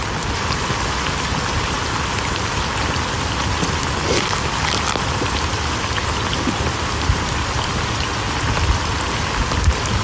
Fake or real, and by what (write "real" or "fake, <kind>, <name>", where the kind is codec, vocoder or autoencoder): real